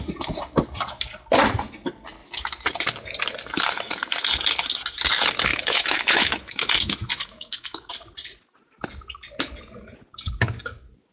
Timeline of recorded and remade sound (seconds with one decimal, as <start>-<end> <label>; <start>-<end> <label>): 0.0-5.5 recorded; 5.5-7.9 remade; 7.9-11.1 recorded